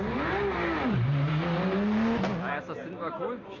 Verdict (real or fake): real